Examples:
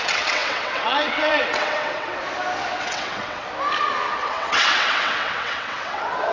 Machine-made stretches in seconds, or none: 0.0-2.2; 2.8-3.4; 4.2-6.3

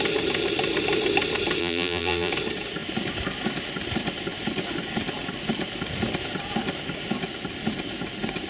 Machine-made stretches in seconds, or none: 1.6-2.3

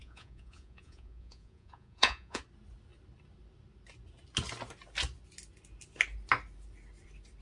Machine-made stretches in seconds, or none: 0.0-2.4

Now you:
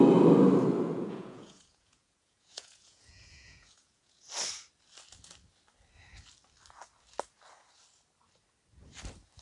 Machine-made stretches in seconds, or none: 0.9-4.3